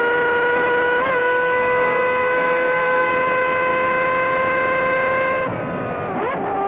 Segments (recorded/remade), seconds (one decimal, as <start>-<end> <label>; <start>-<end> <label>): 0.0-1.2 recorded; 1.2-3.1 remade; 3.1-6.7 recorded